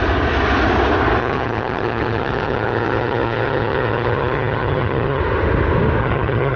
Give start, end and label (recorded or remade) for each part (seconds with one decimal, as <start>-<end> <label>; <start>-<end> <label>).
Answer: 0.0-1.2 recorded; 1.2-5.2 remade; 5.2-6.0 recorded; 6.0-6.6 remade